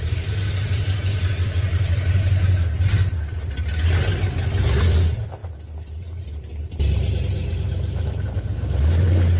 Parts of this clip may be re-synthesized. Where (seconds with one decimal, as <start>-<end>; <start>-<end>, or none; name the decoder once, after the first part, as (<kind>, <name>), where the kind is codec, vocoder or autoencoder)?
0.0-1.1 (vocoder, BigVGAN v2); 4.6-9.4